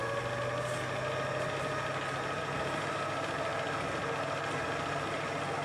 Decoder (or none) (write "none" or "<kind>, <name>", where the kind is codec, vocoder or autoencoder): none